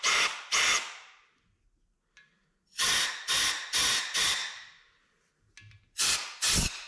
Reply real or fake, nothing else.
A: real